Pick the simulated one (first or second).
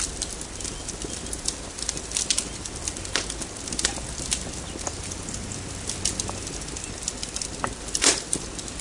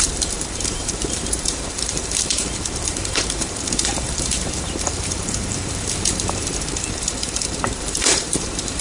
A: second